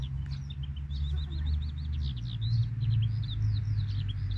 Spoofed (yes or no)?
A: no